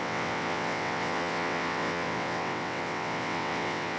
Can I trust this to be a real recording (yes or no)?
no